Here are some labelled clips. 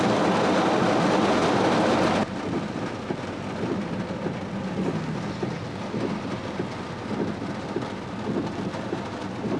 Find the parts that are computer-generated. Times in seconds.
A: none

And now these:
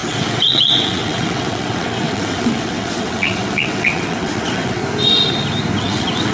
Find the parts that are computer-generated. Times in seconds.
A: 0.0-4.8 (vocoder, WaveNeXt); 5.8-6.3

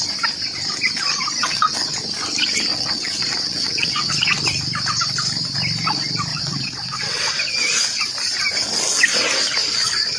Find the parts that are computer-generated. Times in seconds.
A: 1.4-2.0 (vocoder, WaveNeXt); 2.7-4.1; 6.3-7.3

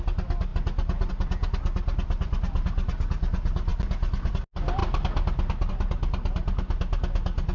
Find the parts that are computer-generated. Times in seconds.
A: none

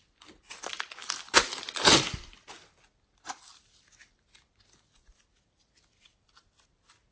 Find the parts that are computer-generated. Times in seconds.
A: none